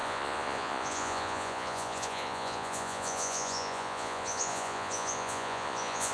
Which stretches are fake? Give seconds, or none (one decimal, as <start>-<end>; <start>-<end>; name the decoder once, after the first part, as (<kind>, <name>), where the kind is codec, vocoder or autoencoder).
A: 0.0-6.1 (vocoder, Vocos)